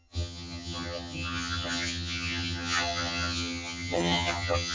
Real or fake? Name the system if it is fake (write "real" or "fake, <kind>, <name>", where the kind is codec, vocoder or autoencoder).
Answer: fake, vocoder, HiFi-GAN